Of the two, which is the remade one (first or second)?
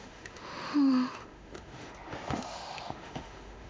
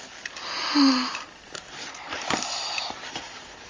first